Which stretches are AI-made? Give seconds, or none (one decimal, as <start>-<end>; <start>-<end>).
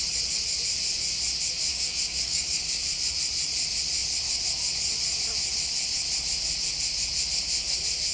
1.7-2.8